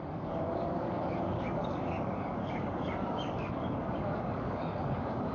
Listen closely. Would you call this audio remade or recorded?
remade